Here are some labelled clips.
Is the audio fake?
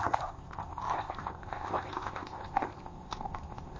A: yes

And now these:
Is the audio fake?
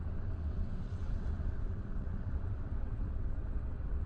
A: yes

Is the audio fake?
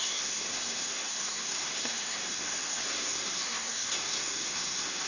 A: yes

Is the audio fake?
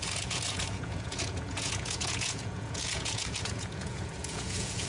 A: yes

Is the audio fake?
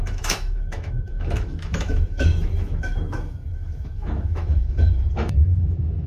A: yes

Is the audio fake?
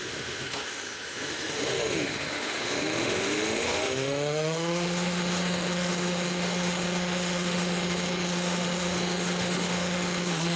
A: yes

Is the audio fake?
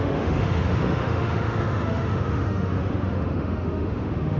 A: yes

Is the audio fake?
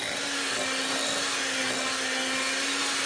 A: no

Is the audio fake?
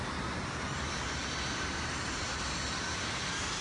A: no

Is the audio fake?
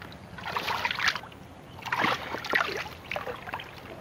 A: no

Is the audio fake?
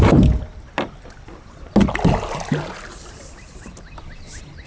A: no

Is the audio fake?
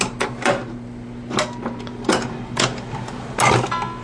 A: no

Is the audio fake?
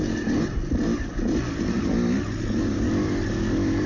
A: no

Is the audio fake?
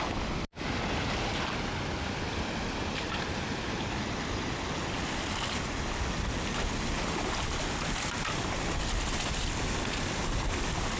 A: no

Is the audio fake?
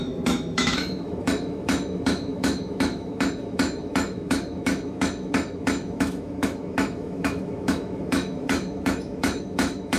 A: yes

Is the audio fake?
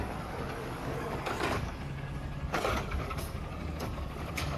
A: yes